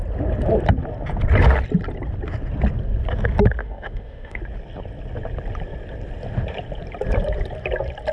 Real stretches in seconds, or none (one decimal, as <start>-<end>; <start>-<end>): 0.0-3.6; 4.4-8.1